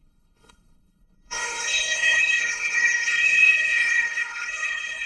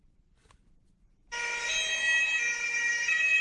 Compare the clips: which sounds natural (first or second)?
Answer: second